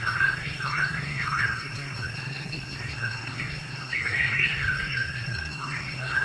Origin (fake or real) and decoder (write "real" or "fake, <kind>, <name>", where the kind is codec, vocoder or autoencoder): fake, codec, SNAC